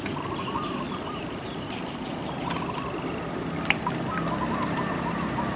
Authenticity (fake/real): fake